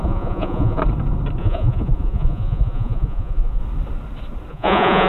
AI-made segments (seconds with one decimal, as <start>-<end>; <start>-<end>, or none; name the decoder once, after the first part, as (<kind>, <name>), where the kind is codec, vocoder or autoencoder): 0.0-0.8 (vocoder, Vocos); 1.4-3.6; 4.5-5.1